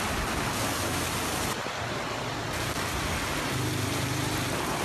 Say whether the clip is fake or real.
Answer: real